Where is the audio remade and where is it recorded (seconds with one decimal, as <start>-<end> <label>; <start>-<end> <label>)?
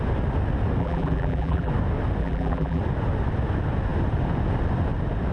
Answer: 0.0-0.8 recorded; 0.8-1.7 remade; 1.7-2.2 recorded; 2.2-2.8 remade; 2.8-5.3 recorded